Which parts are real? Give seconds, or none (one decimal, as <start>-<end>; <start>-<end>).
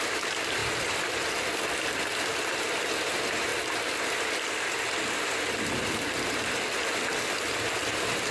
0.0-8.3